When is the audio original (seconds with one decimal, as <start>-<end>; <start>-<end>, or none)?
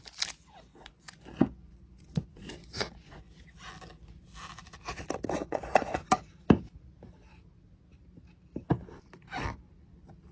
0.0-0.7; 3.3-5.4; 6.1-10.3